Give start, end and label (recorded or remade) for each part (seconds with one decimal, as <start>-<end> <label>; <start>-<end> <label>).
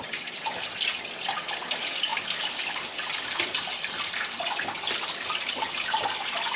0.0-6.6 recorded